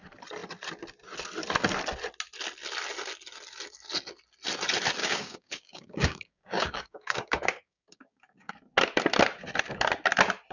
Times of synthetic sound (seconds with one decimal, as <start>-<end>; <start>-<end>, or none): 5.0-8.5